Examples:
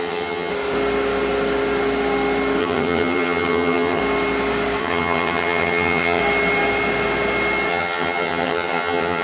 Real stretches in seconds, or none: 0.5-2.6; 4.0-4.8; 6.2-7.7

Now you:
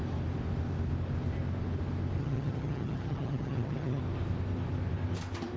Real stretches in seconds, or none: 0.0-2.2; 4.0-5.6

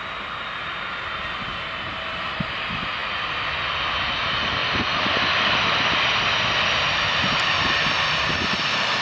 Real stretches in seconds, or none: 0.0-9.0

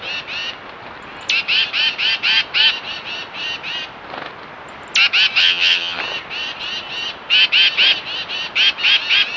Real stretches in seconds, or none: 0.0-5.4; 6.0-9.4

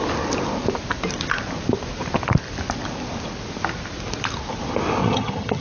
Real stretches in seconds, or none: 0.0-5.0

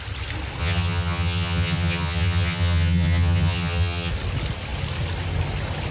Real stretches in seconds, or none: 0.0-0.6; 4.1-5.9

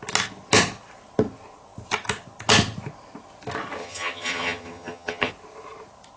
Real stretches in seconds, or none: 0.0-3.8; 5.3-6.2